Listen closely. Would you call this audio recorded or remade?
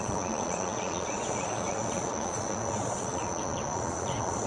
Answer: remade